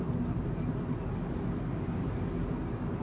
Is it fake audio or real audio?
real